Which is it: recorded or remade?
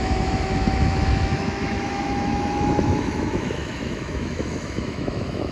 remade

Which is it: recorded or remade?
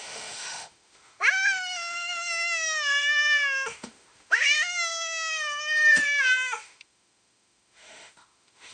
remade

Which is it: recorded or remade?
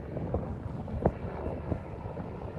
recorded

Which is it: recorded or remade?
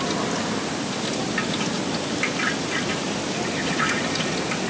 recorded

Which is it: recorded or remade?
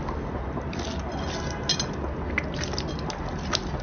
recorded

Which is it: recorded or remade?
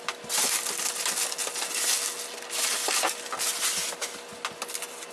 recorded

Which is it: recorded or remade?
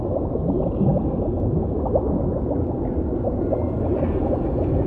recorded